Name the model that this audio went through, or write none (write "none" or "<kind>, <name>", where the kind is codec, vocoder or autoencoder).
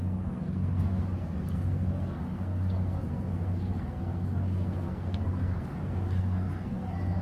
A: codec, SNAC